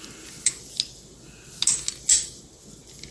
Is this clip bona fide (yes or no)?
yes